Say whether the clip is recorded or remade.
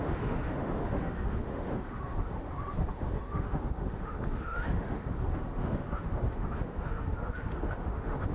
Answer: remade